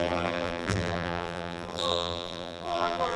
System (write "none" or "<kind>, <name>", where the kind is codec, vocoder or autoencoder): vocoder, BigVGAN v2